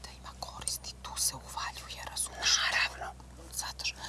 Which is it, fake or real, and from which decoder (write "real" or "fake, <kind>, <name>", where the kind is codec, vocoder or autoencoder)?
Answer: real